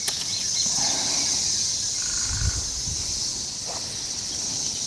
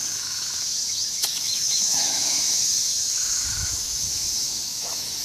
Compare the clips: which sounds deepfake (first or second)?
second